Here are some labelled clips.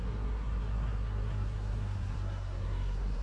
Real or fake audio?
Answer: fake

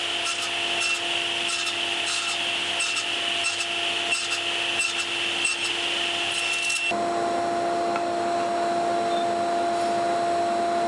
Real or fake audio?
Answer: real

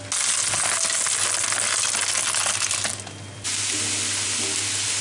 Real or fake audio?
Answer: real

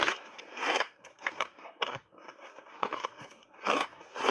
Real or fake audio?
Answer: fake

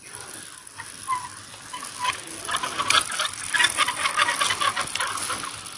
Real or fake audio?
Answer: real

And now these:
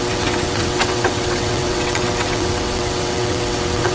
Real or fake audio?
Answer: fake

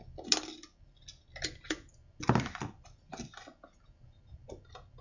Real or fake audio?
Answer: real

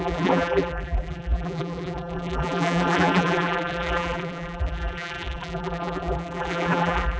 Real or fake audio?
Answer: fake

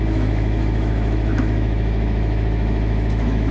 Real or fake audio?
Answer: fake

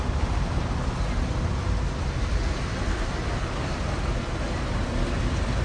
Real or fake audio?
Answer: real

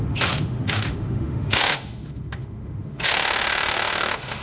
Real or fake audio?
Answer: fake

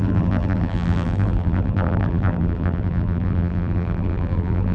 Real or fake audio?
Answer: fake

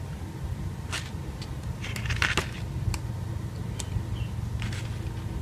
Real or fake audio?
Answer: real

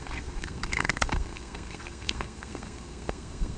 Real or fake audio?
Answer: fake